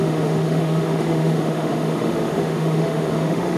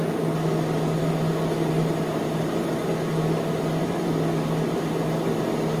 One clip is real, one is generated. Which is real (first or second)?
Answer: second